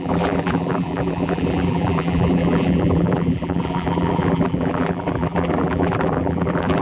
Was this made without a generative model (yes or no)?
no